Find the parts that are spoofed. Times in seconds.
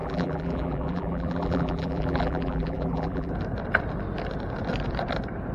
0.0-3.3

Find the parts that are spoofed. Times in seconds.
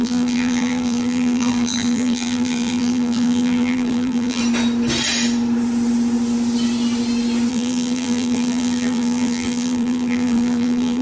0.0-4.4; 7.5-11.0